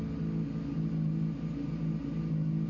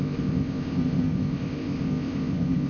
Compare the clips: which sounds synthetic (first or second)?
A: second